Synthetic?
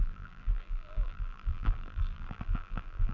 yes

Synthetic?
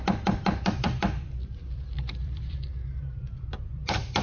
yes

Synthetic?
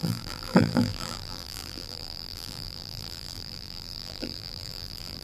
yes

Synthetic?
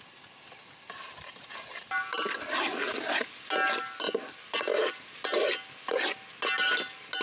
no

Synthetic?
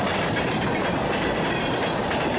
yes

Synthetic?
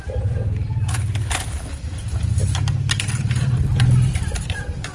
yes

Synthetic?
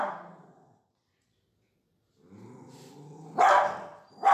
no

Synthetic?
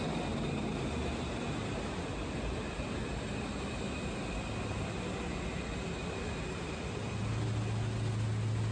no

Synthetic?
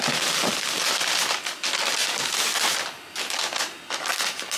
no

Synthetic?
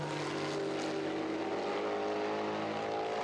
no